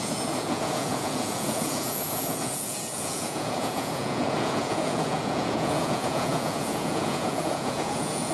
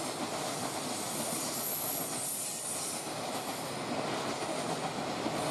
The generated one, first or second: first